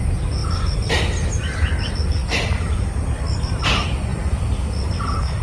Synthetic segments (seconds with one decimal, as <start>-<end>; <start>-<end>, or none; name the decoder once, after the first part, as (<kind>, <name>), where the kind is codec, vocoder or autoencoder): none

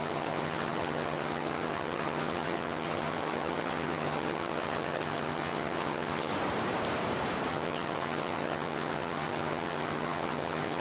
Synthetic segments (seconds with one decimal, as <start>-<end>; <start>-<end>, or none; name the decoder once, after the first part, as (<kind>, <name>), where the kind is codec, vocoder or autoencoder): 0.0-6.3 (vocoder, HiFi-GAN); 7.5-10.8